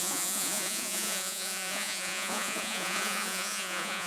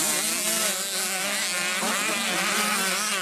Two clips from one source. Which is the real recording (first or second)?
second